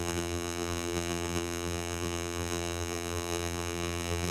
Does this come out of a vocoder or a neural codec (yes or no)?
yes